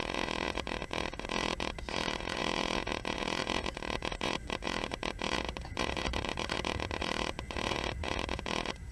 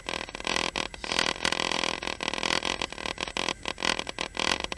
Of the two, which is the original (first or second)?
second